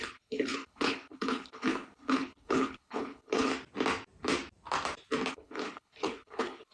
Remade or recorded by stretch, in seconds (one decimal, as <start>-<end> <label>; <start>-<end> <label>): 0.0-3.5 remade; 3.5-5.3 recorded; 5.3-6.7 remade